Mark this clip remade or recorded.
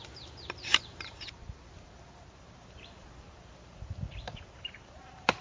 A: remade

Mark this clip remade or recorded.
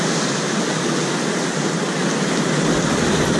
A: recorded